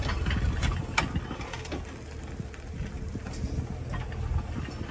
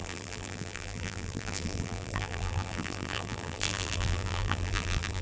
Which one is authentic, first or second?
first